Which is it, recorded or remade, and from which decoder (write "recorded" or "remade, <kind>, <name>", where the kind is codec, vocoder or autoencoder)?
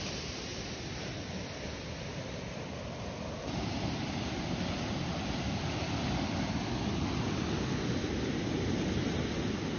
recorded